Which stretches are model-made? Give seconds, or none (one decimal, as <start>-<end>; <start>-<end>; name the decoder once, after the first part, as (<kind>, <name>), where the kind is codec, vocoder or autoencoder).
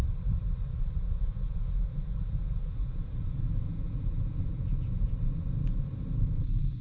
1.0-5.1 (vocoder, Vocos)